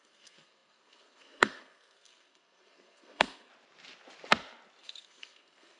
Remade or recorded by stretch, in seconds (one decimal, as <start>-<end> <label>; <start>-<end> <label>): 0.0-3.5 remade; 3.5-4.8 recorded; 4.8-5.8 remade